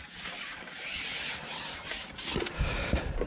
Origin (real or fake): real